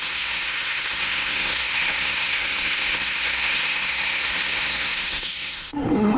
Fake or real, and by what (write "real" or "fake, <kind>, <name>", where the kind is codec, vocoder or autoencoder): fake, codec, SNAC